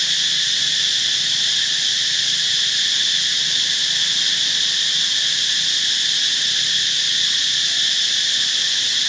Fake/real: real